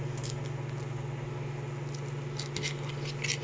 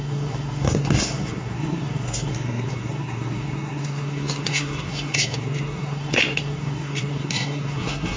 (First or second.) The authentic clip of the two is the first